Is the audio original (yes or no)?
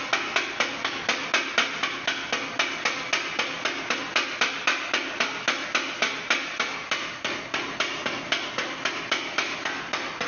yes